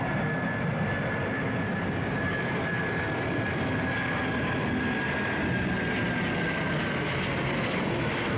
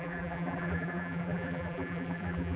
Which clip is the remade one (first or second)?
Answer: second